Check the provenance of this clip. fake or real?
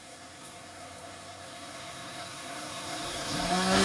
fake